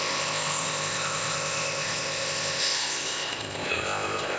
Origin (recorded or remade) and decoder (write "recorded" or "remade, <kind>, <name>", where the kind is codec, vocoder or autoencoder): remade, codec, ZipCodec